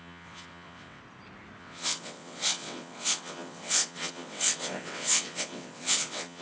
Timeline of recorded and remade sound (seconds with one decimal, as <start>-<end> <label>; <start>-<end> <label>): 0.0-1.0 remade; 1.0-1.6 recorded; 1.6-6.4 remade